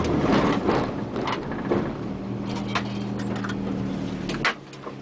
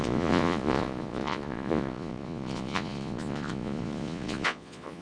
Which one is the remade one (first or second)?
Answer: second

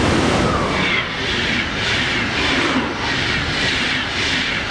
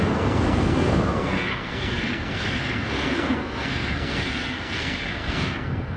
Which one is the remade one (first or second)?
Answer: second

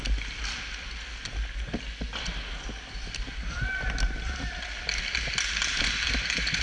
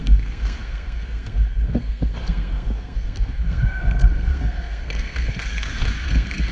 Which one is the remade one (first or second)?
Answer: second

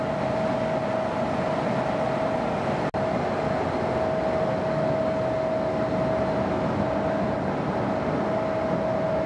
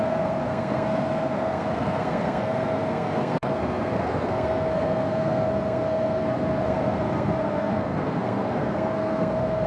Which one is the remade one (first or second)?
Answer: second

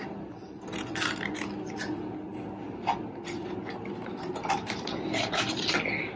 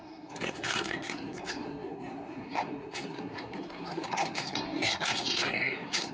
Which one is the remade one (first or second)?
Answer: second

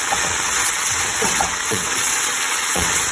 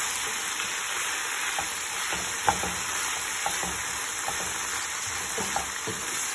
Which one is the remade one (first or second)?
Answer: first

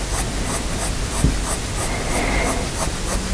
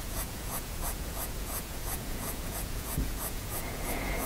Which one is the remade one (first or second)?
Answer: second